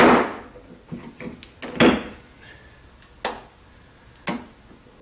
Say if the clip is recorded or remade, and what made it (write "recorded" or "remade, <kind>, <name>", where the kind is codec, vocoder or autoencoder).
recorded